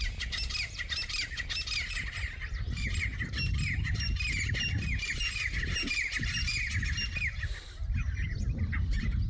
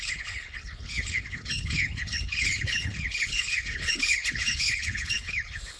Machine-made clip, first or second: second